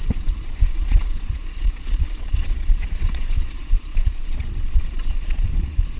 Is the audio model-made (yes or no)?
yes